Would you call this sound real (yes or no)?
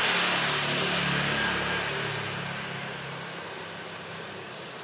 yes